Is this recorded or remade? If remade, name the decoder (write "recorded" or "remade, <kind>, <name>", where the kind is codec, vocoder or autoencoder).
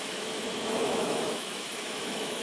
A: remade, autoencoder, DAC-VAE